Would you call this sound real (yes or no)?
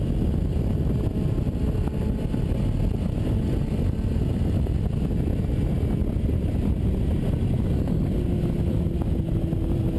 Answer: yes